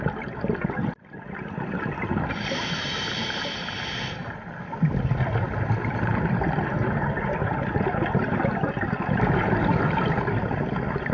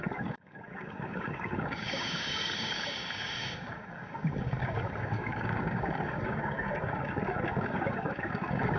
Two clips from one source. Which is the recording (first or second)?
first